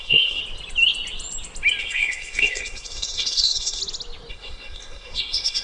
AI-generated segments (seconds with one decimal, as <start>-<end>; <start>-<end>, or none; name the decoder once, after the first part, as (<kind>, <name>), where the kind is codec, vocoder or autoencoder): 0.0-0.4 (codec, SNAC); 1.8-3.8; 4.3-5.6